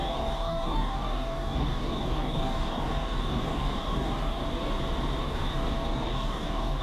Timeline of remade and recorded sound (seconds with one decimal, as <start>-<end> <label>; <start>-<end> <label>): 0.0-4.4 remade; 4.4-5.2 recorded; 5.2-6.8 remade